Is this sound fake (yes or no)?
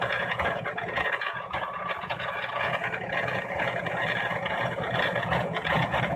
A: yes